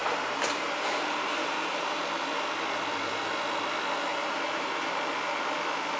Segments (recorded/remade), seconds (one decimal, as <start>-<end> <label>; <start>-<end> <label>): 0.0-2.0 remade; 2.0-4.1 recorded; 4.1-4.9 remade; 4.9-6.0 recorded

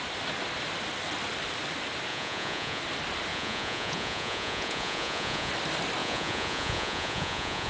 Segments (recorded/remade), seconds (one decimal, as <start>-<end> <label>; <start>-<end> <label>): 0.0-2.1 recorded; 2.1-2.8 remade; 2.8-3.3 recorded; 3.3-5.5 remade; 5.5-6.0 recorded; 6.0-7.7 remade

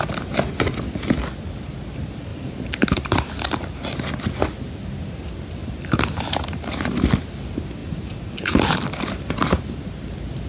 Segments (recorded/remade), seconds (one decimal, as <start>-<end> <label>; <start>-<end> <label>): 0.0-2.3 recorded; 2.3-3.3 remade; 3.3-5.6 recorded; 5.6-6.9 remade; 6.9-7.8 recorded; 7.8-9.9 remade; 9.9-10.5 recorded

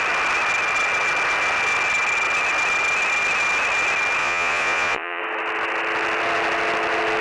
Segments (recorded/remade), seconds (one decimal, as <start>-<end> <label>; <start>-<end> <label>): 0.0-4.2 recorded; 4.2-5.2 remade; 5.2-7.2 recorded